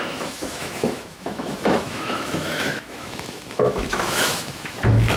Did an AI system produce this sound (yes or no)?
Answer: yes